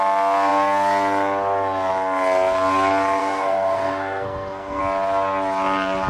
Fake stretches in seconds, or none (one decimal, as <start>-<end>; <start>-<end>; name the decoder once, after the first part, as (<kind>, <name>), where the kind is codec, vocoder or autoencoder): 3.2-4.8 (codec, SNAC)